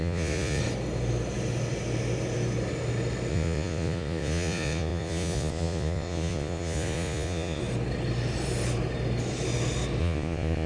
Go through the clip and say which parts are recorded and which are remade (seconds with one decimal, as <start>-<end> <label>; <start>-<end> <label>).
0.0-0.6 remade; 0.6-3.3 recorded; 3.3-7.6 remade; 7.6-10.0 recorded; 10.0-10.7 remade